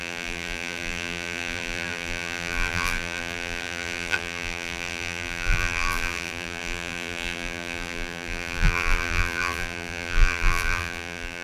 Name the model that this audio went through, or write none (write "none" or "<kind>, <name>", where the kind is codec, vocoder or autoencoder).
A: vocoder, BigVGAN v2